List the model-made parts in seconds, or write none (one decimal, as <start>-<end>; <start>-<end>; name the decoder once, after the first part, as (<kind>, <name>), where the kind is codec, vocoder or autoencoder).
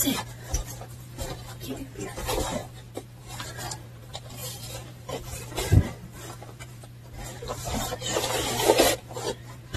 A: 0.0-9.8 (vocoder, BigVGAN v2)